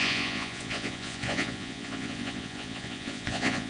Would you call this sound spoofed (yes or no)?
yes